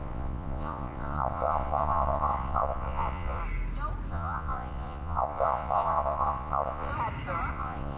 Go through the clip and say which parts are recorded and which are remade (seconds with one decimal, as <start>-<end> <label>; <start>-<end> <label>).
0.0-3.4 remade; 3.4-4.1 recorded; 4.1-6.9 remade; 6.9-7.5 recorded; 7.5-8.0 remade